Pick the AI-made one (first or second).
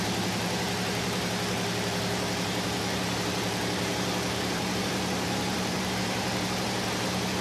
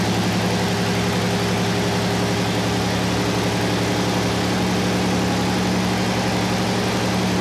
first